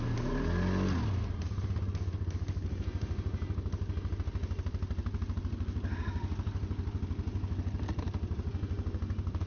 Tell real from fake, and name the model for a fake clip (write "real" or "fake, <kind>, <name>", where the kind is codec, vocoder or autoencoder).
real